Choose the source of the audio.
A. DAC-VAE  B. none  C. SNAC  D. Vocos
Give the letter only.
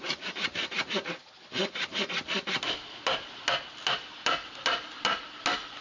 B